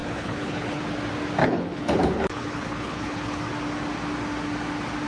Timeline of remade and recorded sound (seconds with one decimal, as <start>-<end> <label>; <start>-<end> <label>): 0.0-0.8 remade; 0.8-1.4 recorded; 1.4-3.4 remade; 3.4-5.1 recorded

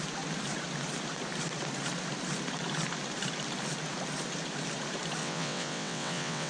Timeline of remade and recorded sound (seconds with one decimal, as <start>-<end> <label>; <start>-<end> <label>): 0.0-5.2 recorded; 5.2-6.5 remade

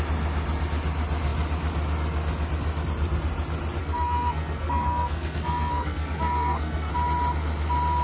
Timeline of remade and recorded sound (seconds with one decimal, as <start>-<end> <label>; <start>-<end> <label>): 0.0-3.8 recorded; 3.8-6.9 remade; 6.9-8.0 recorded

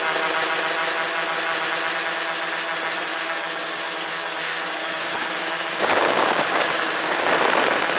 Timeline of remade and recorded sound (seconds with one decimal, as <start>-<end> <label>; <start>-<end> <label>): 0.0-3.1 recorded; 3.1-7.2 remade; 7.2-8.0 recorded

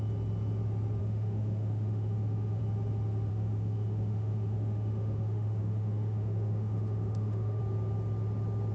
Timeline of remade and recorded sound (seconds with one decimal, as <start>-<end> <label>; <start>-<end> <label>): 0.0-1.0 recorded; 1.0-2.6 remade; 2.6-3.3 recorded; 3.3-7.6 remade; 7.6-8.7 recorded

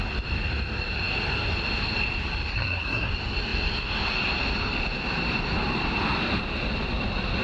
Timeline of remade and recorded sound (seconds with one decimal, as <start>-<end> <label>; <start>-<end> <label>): 0.0-2.5 recorded; 2.5-3.1 remade; 3.1-7.4 recorded